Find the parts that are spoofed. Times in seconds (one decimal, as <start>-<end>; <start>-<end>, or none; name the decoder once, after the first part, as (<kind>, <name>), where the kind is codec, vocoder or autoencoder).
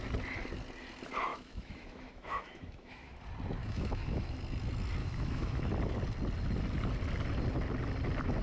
1.3-3.2 (autoencoder, DAC-VAE); 3.6-4.4; 5.0-5.6